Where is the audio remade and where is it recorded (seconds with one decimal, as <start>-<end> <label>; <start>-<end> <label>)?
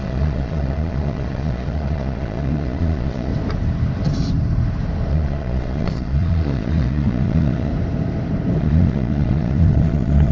0.0-3.3 remade; 3.3-5.1 recorded; 5.1-7.7 remade; 7.7-8.6 recorded; 8.6-10.3 remade